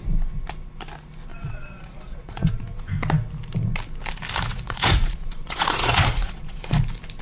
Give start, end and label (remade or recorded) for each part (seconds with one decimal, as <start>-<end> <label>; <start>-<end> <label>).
0.0-1.3 recorded; 1.3-2.6 remade; 2.6-4.5 recorded; 4.5-6.8 remade; 6.8-7.2 recorded